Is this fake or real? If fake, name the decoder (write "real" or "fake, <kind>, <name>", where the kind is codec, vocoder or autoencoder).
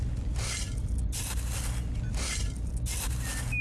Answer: real